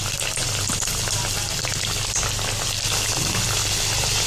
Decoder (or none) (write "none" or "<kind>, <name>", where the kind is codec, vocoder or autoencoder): none